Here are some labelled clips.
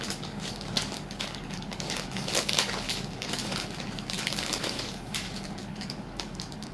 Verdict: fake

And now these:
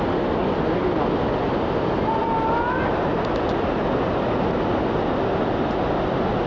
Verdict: real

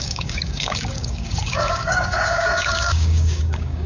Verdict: fake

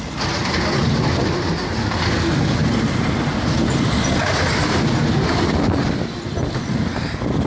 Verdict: real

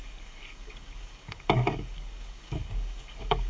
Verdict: fake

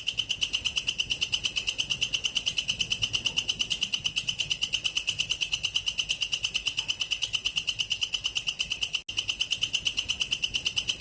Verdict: real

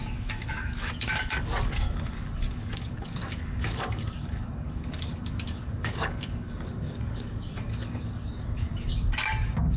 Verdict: fake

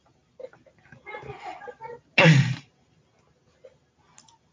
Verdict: real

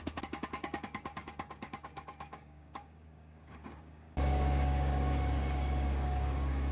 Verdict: fake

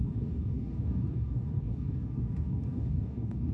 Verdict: fake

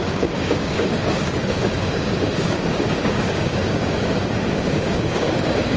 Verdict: fake